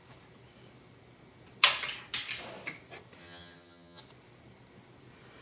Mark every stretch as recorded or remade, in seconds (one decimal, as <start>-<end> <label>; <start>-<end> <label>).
0.0-3.2 recorded; 3.2-4.0 remade; 4.0-5.4 recorded